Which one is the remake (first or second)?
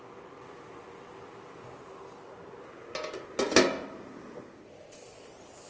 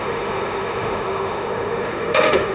second